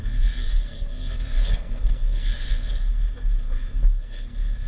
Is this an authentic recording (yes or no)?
no